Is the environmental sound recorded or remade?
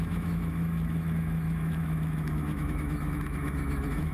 remade